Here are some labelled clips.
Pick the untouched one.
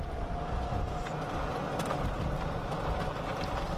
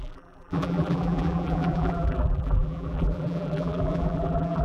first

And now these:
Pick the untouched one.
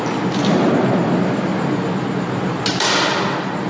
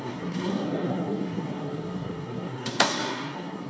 first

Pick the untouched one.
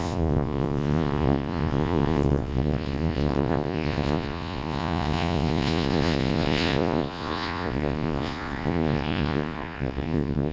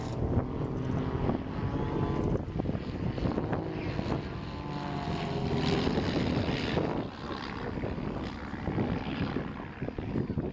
second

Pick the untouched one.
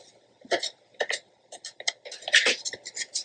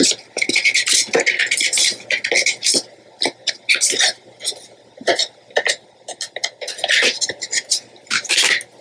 second